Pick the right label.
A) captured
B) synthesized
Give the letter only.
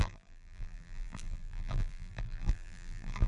B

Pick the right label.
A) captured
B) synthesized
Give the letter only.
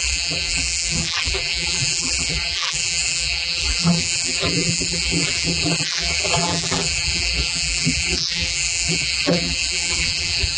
B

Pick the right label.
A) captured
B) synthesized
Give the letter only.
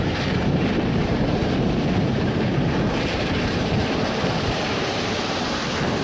B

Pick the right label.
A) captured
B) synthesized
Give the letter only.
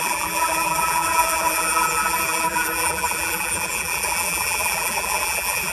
B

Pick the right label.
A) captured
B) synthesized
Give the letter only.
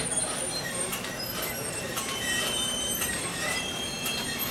B